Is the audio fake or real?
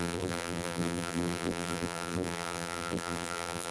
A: fake